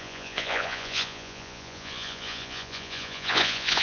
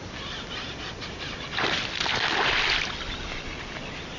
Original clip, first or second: second